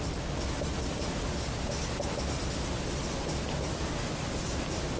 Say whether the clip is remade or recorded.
recorded